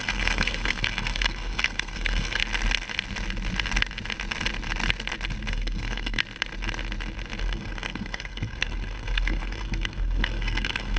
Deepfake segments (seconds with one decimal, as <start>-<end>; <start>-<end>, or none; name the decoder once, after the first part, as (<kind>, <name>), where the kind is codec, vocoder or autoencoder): 0.0-2.4 (codec, SNAC); 5.5-6.2; 7.4-11.0